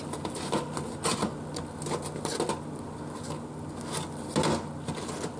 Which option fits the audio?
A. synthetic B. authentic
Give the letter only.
B